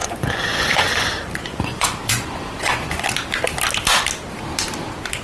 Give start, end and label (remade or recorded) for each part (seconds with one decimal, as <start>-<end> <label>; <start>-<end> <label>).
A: 0.0-3.1 remade; 3.1-5.2 recorded